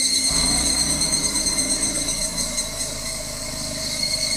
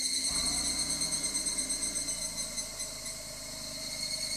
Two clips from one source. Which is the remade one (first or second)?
first